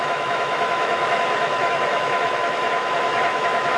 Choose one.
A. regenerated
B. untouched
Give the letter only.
A